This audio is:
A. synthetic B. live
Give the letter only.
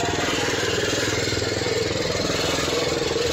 B